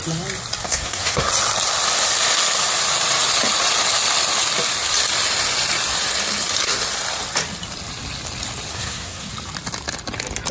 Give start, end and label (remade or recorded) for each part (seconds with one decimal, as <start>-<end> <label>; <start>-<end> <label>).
0.0-0.6 recorded; 0.6-1.3 remade; 1.3-8.7 recorded; 8.7-9.3 remade; 9.3-10.5 recorded